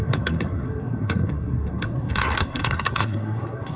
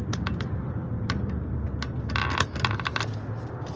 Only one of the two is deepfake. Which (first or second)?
first